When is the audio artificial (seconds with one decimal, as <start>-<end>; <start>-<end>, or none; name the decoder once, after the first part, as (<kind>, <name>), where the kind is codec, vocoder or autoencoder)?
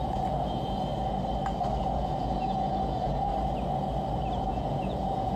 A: 0.0-0.9 (vocoder, Vocos); 1.8-3.3; 4.4-5.4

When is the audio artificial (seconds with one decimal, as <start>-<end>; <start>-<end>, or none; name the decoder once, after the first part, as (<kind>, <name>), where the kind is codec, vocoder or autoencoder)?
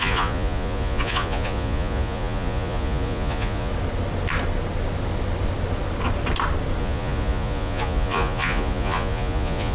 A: 0.0-3.7 (vocoder, Vocos); 6.8-9.7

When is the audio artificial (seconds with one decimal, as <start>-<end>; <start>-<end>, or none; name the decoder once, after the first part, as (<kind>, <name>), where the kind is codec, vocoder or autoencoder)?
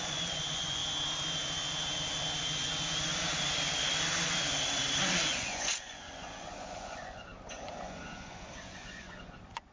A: 0.0-0.8 (vocoder, Vocos); 5.3-9.7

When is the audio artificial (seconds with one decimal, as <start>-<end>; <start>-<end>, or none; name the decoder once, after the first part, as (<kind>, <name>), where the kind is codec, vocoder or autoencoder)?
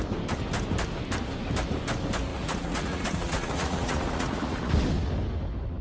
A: 2.3-4.7 (vocoder, Vocos)